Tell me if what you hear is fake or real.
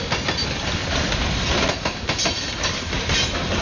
real